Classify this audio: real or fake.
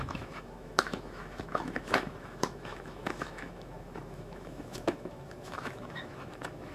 fake